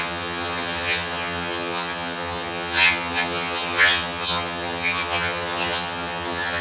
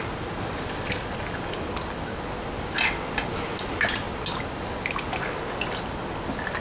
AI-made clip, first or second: first